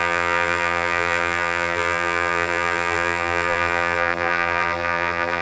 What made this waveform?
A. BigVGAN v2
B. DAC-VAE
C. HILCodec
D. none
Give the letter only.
A